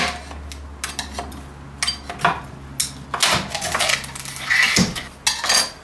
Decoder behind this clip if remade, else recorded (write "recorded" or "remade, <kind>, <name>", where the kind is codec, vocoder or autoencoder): recorded